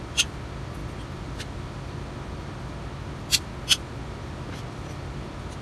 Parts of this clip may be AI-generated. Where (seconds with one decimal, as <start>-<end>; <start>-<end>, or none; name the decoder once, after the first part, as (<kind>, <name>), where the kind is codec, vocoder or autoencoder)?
none